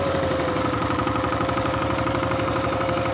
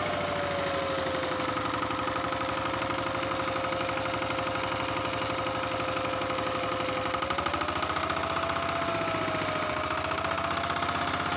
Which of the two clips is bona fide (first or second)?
second